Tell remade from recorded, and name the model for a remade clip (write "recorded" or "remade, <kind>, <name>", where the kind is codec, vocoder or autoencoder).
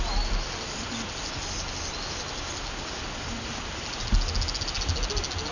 recorded